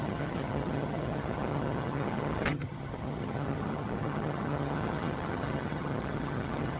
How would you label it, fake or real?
fake